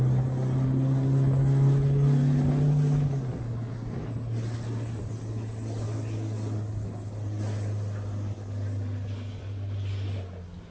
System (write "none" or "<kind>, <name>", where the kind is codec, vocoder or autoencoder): none